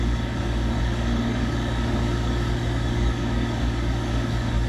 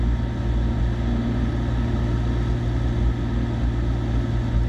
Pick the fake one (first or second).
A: first